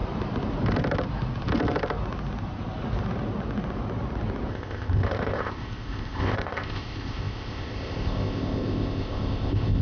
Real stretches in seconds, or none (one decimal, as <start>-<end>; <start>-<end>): 0.0-4.5